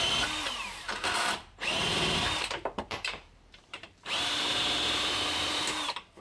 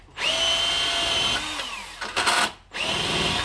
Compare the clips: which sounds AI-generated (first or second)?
first